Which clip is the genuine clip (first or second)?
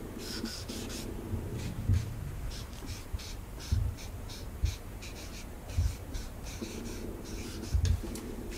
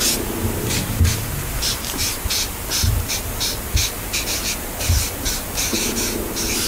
second